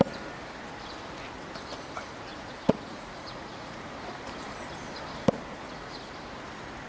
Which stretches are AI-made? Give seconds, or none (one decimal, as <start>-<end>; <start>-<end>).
2.3-3.9